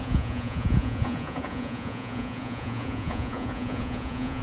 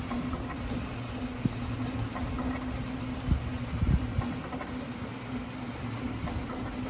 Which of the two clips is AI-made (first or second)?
first